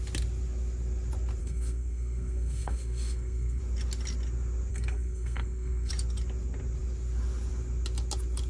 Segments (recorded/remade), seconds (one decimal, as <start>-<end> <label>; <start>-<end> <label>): 0.0-1.4 recorded; 1.4-3.6 remade; 3.6-4.7 recorded; 4.7-5.9 remade; 5.9-8.5 recorded